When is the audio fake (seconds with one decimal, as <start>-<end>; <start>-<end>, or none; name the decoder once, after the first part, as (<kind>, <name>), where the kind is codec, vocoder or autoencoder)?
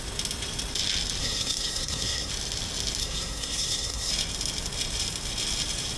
1.2-2.3 (codec, SNAC); 3.0-4.1